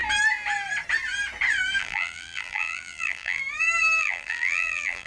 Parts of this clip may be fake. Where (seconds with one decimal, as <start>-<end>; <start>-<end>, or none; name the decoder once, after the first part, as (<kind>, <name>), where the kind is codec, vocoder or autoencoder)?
1.8-3.4 (vocoder, BigVGAN v2); 4.0-5.1